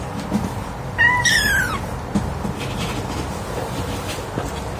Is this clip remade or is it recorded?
recorded